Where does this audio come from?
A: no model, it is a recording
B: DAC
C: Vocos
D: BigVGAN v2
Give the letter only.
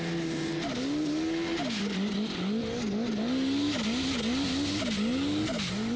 A